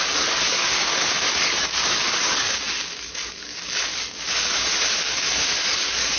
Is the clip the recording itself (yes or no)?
no